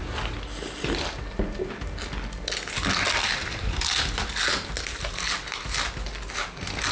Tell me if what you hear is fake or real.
real